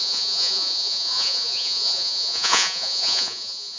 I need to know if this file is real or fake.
fake